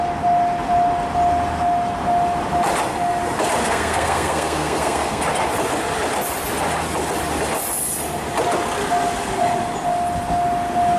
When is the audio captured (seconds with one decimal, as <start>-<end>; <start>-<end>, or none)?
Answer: 0.0-3.6; 5.2-11.0